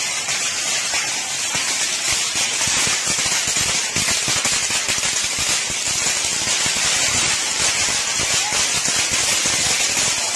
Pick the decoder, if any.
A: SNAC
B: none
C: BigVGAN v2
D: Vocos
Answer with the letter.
B